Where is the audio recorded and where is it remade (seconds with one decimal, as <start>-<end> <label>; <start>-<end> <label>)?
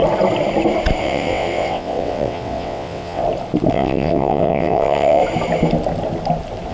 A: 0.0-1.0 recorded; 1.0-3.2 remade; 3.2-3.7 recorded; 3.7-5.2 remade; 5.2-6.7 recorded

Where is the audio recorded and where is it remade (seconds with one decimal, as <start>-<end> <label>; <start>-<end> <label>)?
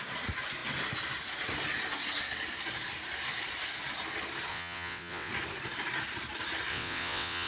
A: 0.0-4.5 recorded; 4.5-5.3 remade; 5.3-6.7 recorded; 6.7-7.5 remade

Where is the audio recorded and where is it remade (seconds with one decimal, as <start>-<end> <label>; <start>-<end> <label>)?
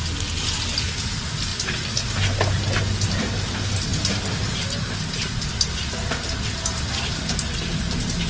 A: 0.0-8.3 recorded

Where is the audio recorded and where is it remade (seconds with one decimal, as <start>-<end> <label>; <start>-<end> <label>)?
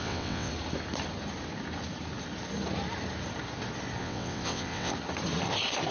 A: 0.0-0.5 remade; 0.5-4.0 recorded; 4.0-4.9 remade; 4.9-5.9 recorded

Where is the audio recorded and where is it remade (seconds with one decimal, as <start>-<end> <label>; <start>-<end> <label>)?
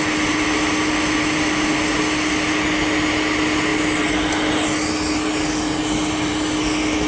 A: 0.0-7.1 recorded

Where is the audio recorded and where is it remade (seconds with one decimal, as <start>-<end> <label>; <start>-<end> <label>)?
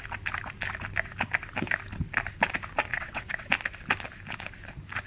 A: 0.0-2.9 recorded; 2.9-3.5 remade; 3.5-5.1 recorded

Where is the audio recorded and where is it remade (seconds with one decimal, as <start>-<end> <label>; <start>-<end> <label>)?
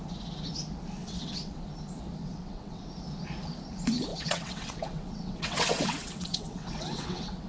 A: 0.0-1.0 recorded; 1.0-1.5 remade; 1.5-2.2 recorded; 2.2-2.9 remade; 2.9-4.1 recorded; 4.1-7.5 remade